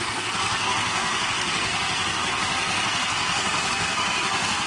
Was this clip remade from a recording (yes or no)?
yes